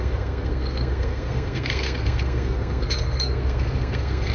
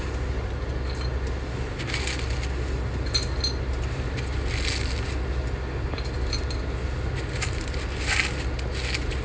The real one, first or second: second